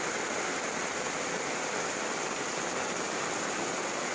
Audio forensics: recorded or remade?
recorded